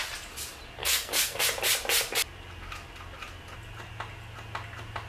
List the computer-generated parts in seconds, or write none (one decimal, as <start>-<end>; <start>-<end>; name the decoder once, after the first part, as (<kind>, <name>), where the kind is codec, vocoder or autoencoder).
0.8-1.4 (codec, SNAC)